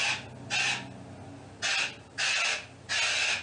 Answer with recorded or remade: recorded